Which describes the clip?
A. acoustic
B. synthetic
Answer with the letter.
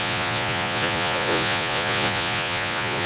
B